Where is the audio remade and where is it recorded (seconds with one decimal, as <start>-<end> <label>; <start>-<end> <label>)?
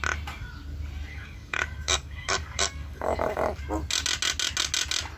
0.0-1.1 recorded; 1.1-3.6 remade; 3.6-5.2 recorded